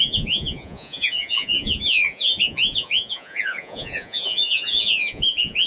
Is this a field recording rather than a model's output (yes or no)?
no